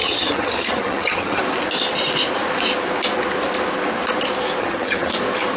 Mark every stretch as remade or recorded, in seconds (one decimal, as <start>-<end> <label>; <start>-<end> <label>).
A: 0.0-1.4 remade; 1.4-4.6 recorded; 4.6-5.1 remade; 5.1-5.6 recorded